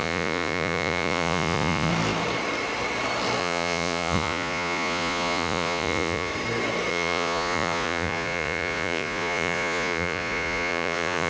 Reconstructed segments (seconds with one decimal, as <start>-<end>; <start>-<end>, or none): 0.0-1.9; 3.4-6.3; 6.9-11.3